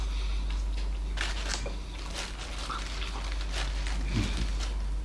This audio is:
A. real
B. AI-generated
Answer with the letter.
A